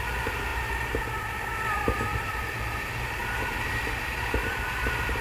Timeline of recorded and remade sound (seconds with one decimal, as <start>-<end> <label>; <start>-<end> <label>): 0.0-0.5 remade; 0.5-1.4 recorded; 1.4-3.2 remade; 3.2-5.2 recorded